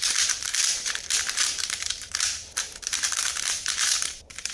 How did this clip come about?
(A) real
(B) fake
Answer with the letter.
B